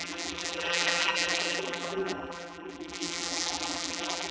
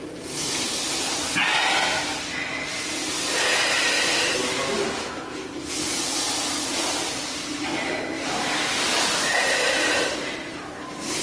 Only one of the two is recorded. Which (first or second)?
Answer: second